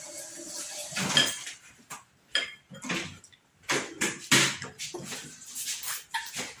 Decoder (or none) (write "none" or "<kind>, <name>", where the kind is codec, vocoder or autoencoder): none